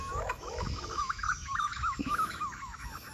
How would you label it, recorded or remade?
remade